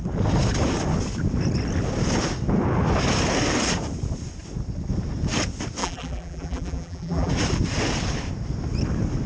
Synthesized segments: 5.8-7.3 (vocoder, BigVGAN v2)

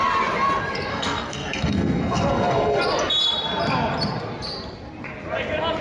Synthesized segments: 0.9-2.8 (codec, SNAC)

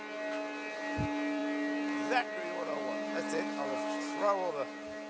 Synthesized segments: none

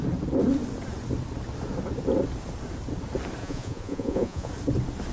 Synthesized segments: 3.4-4.5 (vocoder, Vocos)

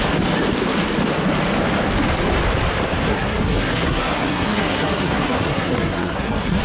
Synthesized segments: 3.1-6.6 (codec, SNAC)